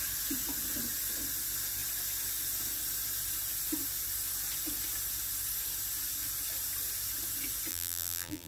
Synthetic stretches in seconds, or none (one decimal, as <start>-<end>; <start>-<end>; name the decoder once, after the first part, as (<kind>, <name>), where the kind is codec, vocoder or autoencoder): 7.7-8.5 (vocoder, BigVGAN v2)